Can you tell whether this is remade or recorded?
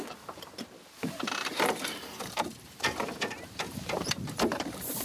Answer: remade